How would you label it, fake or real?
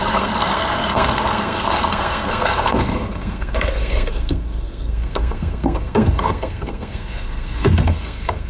fake